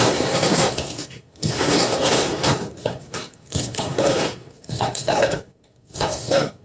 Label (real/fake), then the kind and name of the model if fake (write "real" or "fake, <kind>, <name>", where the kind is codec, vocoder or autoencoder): fake, codec, SNAC